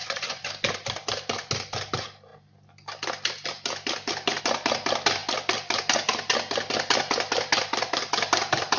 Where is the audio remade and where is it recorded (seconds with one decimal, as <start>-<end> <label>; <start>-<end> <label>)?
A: 0.0-0.5 remade; 0.5-8.8 recorded